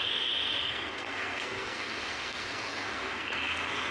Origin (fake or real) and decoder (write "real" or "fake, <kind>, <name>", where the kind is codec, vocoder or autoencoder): fake, codec, SNAC